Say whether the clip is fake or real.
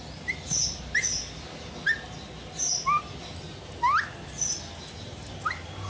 real